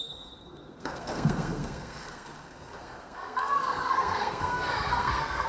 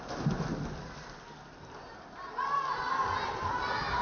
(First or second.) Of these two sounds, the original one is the second